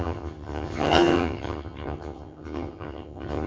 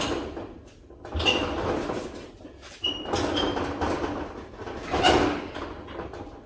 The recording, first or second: second